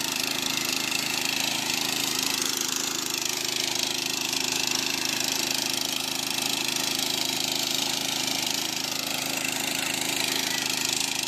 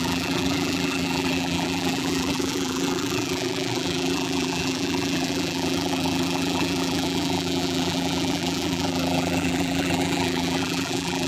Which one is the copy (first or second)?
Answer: second